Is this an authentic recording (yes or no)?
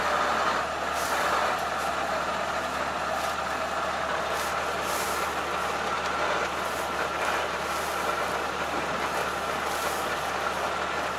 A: yes